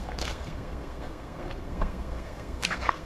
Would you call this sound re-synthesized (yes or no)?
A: yes